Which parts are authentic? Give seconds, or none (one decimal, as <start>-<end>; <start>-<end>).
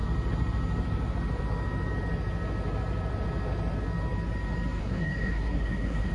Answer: 0.0-4.8